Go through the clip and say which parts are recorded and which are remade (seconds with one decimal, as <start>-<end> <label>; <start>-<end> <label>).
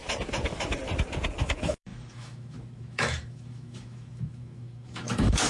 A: 0.0-1.4 recorded; 1.4-5.5 remade